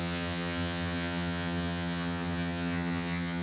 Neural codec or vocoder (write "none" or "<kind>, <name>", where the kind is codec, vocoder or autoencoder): vocoder, HiFi-GAN